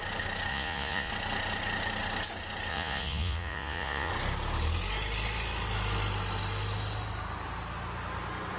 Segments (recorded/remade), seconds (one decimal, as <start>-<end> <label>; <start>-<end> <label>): 0.0-0.5 recorded; 0.5-1.1 remade; 1.1-2.7 recorded; 2.7-4.1 remade; 4.1-8.6 recorded